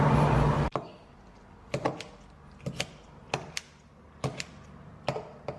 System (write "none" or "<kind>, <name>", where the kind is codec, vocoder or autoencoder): none